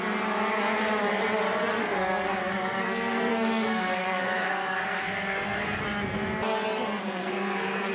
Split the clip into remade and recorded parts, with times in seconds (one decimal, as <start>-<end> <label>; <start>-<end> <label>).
0.0-1.8 recorded; 1.8-5.8 remade; 5.8-7.0 recorded; 7.0-7.9 remade